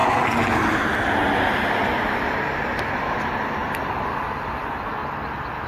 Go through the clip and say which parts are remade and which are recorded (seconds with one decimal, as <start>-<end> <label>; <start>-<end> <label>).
0.0-5.7 recorded